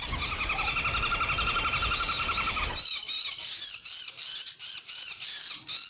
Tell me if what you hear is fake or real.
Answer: real